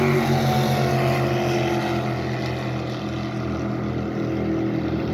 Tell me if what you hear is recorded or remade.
recorded